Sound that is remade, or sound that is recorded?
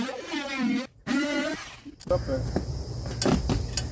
recorded